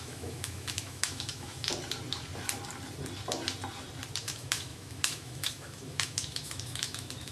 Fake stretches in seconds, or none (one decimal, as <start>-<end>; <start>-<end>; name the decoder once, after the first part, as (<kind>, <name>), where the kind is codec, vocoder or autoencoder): 0.0-1.7 (autoencoder, DAC-VAE); 4.2-7.3